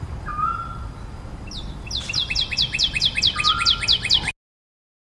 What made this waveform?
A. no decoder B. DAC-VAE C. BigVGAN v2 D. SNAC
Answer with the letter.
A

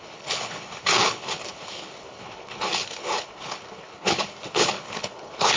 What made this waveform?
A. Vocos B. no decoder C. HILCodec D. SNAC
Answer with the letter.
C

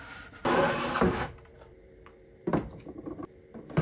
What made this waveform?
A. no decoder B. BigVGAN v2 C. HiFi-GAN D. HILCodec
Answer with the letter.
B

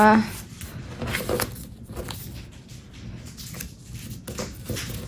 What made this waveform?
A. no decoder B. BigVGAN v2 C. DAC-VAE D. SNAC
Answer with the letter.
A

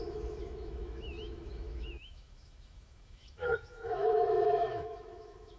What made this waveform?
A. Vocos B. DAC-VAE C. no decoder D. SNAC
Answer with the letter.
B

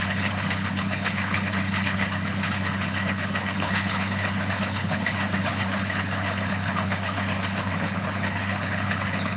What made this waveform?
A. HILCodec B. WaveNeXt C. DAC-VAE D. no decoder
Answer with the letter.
A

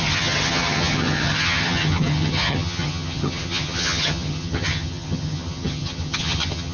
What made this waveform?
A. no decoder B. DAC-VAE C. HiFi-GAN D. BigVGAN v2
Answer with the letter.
C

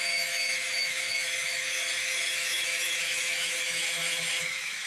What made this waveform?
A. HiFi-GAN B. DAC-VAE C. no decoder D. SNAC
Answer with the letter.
B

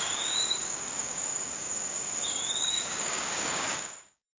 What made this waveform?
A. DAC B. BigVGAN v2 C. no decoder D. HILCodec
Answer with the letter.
A